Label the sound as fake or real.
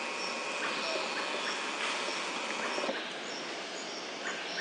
real